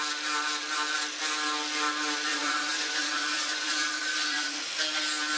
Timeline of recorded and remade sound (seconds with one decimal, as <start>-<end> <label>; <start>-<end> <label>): 0.0-2.3 recorded; 2.3-4.7 remade; 4.7-5.4 recorded